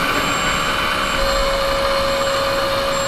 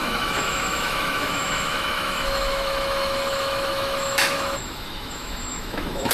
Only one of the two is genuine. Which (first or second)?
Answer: first